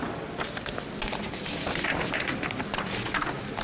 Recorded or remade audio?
recorded